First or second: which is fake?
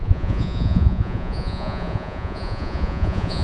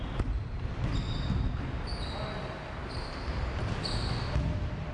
first